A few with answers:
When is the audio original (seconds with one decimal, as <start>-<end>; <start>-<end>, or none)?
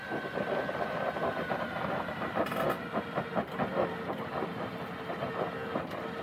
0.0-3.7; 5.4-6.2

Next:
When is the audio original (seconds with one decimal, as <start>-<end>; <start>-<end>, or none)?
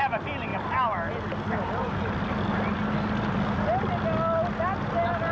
0.0-5.3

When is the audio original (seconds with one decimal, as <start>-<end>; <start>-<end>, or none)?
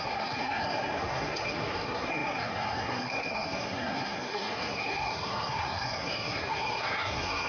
none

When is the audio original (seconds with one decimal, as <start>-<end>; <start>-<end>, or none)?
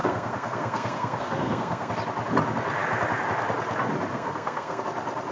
1.9-4.1; 4.8-5.3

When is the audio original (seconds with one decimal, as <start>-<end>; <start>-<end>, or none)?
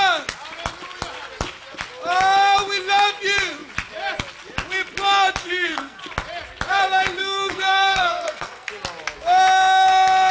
0.0-5.4; 6.0-7.2; 8.7-10.3